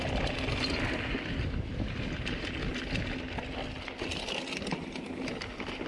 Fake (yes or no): no